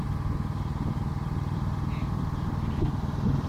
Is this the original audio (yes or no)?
yes